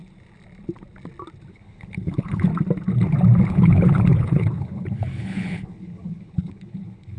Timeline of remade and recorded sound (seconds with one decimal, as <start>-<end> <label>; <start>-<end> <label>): 0.0-1.5 recorded; 1.5-2.5 remade; 2.5-3.5 recorded; 3.5-7.2 remade